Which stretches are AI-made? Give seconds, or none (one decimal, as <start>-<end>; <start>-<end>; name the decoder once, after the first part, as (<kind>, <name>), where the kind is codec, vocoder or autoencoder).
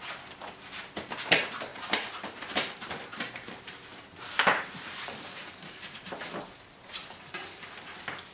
1.7-6.3 (vocoder, BigVGAN v2); 7.0-7.9